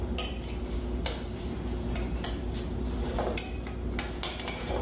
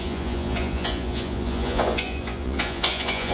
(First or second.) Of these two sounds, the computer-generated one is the second